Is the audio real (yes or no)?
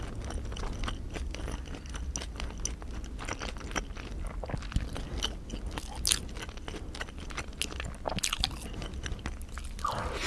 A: yes